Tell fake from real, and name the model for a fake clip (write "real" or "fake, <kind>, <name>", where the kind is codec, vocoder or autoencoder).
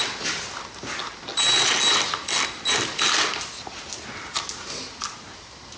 real